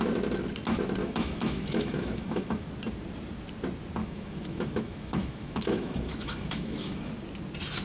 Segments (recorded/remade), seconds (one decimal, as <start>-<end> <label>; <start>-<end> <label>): 0.0-1.0 recorded; 1.0-2.7 remade; 2.7-4.0 recorded; 4.0-7.1 remade; 7.1-7.8 recorded